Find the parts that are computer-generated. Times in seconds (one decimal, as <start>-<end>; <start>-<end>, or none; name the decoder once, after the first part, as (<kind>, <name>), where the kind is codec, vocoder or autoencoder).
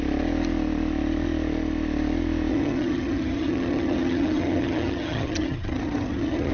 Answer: 2.5-6.5 (vocoder, HiFi-GAN)